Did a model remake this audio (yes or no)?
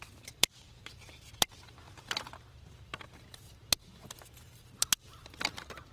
yes